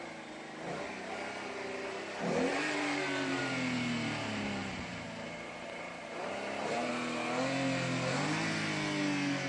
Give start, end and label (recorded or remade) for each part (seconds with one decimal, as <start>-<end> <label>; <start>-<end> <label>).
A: 0.0-2.5 recorded; 2.5-3.4 remade; 3.4-4.6 recorded; 4.6-6.9 remade; 6.9-9.5 recorded